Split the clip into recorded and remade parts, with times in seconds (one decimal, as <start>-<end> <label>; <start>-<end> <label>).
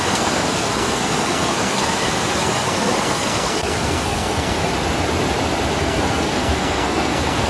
0.0-4.7 remade; 4.7-5.8 recorded; 5.8-7.5 remade